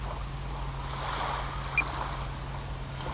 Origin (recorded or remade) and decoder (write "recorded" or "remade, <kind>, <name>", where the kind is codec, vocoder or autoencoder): recorded